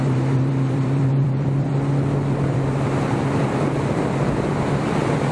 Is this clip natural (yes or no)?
no